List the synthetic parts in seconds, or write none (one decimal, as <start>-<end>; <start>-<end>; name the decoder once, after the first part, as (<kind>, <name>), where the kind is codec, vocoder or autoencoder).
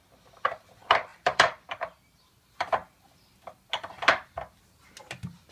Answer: 1.1-3.6 (vocoder, BigVGAN v2)